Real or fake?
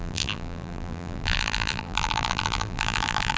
fake